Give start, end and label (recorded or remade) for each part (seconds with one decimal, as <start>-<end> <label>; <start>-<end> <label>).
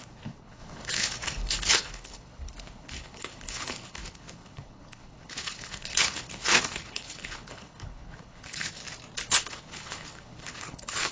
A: 0.0-8.8 remade; 8.8-9.3 recorded; 9.3-11.1 remade